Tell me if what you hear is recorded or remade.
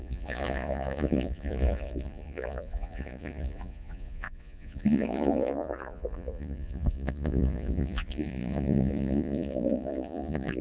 remade